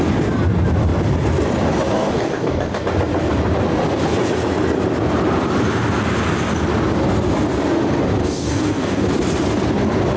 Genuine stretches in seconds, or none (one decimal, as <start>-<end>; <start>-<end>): 0.0-1.9; 2.8-8.2; 9.0-10.2